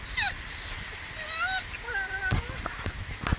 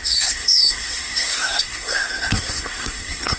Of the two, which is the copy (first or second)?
second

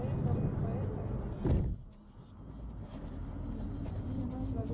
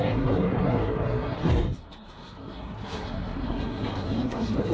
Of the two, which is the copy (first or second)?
second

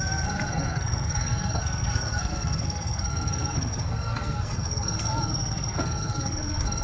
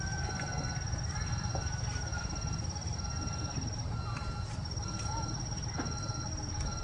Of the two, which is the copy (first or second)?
first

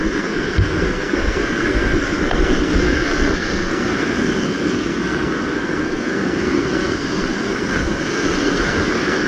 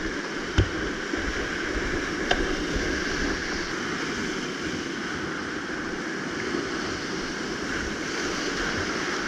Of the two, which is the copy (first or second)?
first